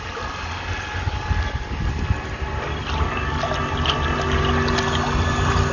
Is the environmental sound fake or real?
real